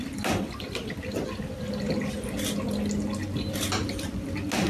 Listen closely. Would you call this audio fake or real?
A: real